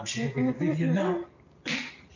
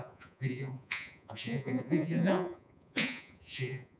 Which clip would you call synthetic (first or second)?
second